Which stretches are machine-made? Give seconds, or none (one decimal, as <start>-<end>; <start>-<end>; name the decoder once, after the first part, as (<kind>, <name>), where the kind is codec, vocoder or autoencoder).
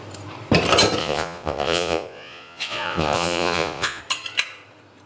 1.0-4.0 (vocoder, Vocos)